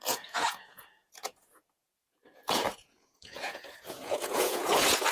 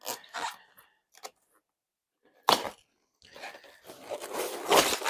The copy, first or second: first